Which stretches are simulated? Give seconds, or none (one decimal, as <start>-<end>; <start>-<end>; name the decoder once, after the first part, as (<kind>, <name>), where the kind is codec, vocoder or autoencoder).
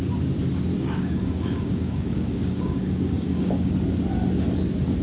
0.7-3.7 (codec, DAC)